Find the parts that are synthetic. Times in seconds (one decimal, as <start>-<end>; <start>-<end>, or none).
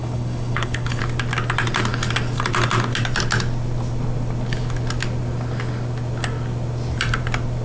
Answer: 0.0-1.0